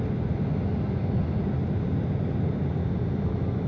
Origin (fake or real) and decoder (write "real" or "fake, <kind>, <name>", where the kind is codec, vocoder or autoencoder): real